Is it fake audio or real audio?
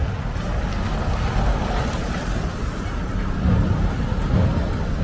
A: real